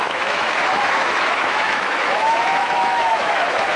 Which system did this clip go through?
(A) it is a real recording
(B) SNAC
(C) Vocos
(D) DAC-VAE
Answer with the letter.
D